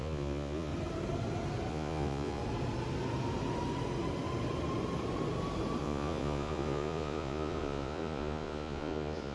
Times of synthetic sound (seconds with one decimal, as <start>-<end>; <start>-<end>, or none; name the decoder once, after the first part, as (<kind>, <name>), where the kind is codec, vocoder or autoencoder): 0.0-0.7 (vocoder, Vocos); 1.7-2.4; 5.8-9.3